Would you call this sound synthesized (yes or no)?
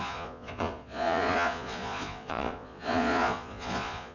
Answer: yes